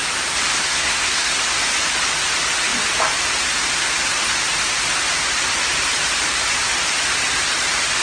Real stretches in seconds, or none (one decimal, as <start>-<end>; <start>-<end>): 0.0-0.6; 1.4-8.0